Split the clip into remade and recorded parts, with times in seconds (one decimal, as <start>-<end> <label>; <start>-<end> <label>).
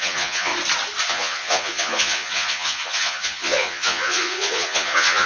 0.0-0.5 remade; 0.5-1.1 recorded; 1.1-5.3 remade